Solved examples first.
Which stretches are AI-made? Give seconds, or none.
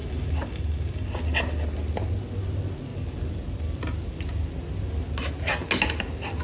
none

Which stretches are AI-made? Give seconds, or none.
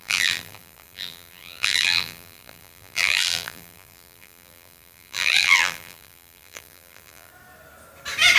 0.0-7.3 (vocoder, BigVGAN v2)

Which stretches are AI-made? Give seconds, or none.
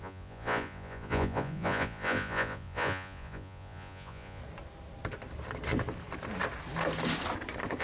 0.0-4.4 (vocoder, Vocos)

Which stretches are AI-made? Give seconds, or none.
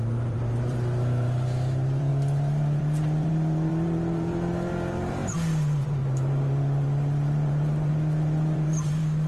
0.0-9.3 (vocoder, BigVGAN v2)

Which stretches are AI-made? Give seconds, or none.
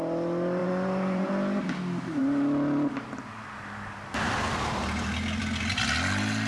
0.6-1.3 (vocoder, Vocos)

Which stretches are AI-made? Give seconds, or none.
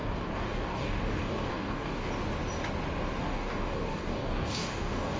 0.0-2.1 (codec, DAC); 3.2-5.2